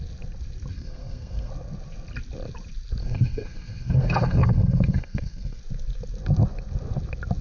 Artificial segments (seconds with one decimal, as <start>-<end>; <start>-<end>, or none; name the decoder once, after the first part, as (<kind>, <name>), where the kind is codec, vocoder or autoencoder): 0.7-1.5 (codec, SNAC); 3.0-5.6